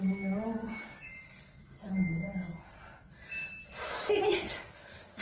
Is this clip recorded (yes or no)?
yes